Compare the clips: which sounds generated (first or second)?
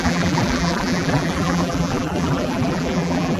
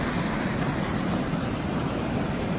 first